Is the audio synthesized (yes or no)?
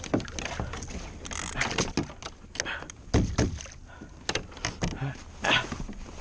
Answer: no